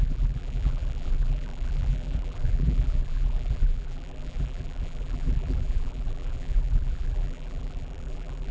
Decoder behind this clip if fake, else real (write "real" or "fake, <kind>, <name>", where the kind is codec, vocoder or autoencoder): fake, vocoder, BigVGAN v2